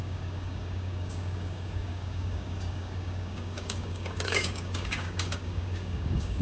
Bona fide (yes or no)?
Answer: no